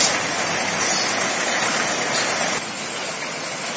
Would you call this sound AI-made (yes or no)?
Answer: no